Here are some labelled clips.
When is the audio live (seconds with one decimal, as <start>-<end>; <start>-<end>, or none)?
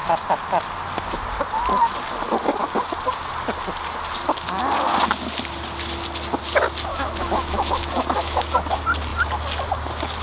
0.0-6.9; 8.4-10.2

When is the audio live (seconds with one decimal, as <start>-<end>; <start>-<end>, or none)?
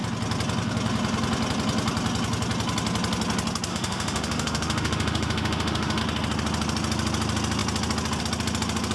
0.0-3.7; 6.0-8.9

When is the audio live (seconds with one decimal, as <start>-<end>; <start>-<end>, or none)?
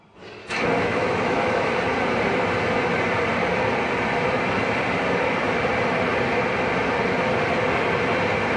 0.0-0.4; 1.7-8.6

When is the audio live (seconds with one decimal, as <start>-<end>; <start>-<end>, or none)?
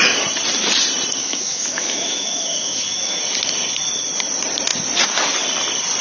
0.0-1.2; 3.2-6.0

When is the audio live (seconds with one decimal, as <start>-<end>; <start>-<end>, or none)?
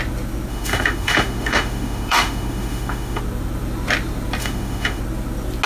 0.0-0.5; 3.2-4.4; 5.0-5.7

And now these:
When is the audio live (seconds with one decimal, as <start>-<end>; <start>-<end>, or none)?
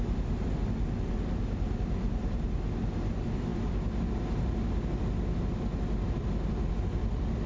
0.0-7.5